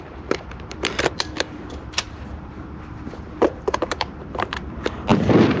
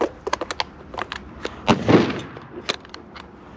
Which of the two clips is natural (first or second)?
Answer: second